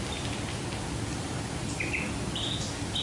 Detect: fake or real real